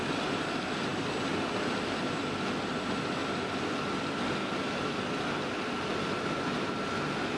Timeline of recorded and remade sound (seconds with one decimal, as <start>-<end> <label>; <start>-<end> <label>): 0.0-7.4 recorded